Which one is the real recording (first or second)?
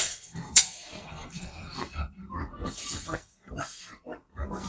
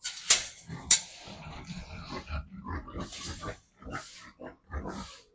second